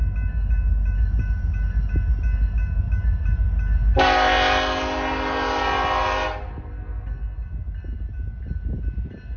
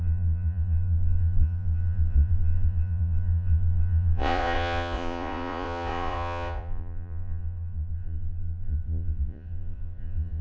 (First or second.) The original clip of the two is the first